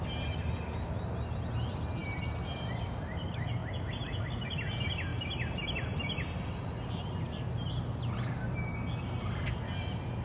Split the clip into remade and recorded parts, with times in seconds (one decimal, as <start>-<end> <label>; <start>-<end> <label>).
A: 0.0-10.2 recorded